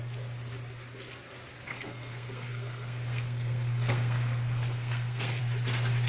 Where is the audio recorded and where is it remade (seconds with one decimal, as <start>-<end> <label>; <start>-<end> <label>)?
0.0-1.7 recorded; 1.7-5.4 remade; 5.4-6.1 recorded